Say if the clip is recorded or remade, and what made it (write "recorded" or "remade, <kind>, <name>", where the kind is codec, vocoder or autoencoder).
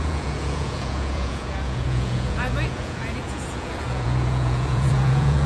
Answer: remade, vocoder, Vocos